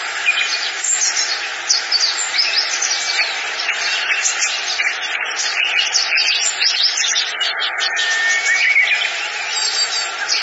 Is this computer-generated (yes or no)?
no